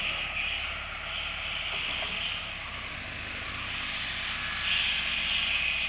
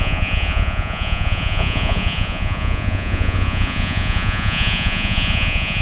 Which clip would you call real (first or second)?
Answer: first